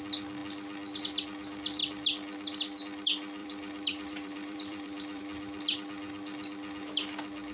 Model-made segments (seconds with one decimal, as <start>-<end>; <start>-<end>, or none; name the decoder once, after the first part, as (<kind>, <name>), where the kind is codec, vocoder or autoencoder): 3.4-5.2 (vocoder, BigVGAN v2)